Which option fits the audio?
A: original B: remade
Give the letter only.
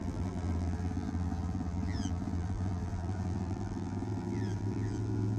B